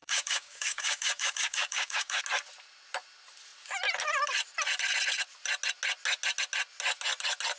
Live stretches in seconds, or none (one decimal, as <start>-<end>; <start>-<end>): 2.2-7.6